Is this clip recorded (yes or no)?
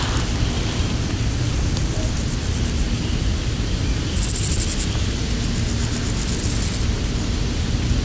yes